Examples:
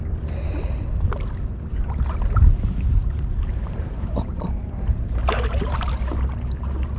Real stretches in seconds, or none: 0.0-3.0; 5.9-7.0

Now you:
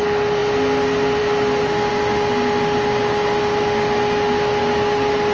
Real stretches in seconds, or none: 0.0-5.3